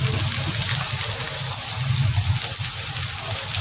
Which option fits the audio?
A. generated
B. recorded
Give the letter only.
B